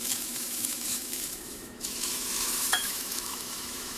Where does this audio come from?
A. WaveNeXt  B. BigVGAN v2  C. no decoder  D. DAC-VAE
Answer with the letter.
D